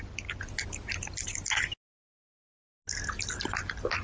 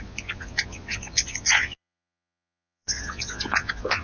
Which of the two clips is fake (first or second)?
second